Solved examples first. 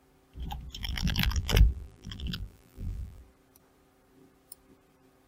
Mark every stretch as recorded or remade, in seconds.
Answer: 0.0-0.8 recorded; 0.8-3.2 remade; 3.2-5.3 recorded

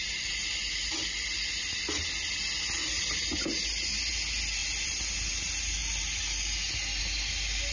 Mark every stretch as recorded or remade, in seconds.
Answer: 0.0-4.6 recorded; 4.6-5.3 remade; 5.3-7.7 recorded

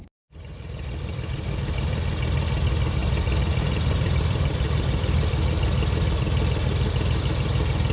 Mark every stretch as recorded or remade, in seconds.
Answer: 0.0-3.0 recorded; 3.0-4.8 remade; 4.8-7.9 recorded

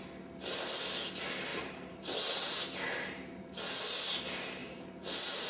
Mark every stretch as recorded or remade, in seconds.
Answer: 0.0-1.5 recorded; 1.5-2.6 remade; 2.6-4.6 recorded; 4.6-5.5 remade

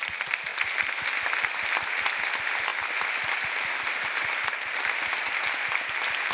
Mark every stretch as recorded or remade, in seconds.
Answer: 0.0-6.3 recorded

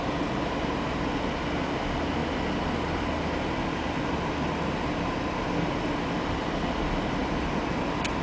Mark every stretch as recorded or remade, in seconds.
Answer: 0.0-8.2 recorded

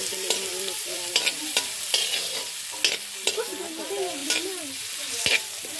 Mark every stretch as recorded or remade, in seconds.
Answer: 0.0-0.5 recorded; 0.5-2.6 remade; 2.6-4.2 recorded; 4.2-5.0 remade; 5.0-5.8 recorded